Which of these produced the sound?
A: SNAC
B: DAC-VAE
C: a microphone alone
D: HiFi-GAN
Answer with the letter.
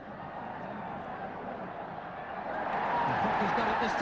C